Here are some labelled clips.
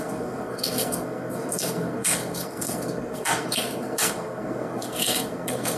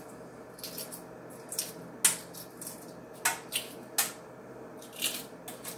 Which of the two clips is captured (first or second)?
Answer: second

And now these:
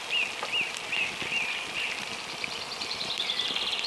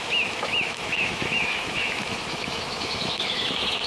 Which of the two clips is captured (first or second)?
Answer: first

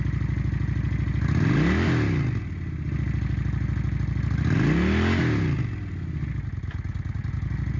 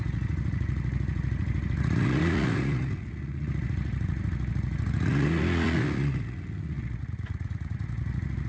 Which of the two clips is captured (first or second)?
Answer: first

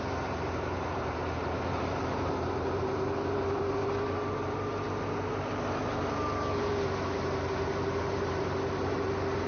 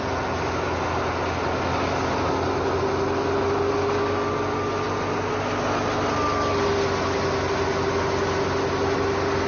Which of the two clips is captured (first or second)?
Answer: second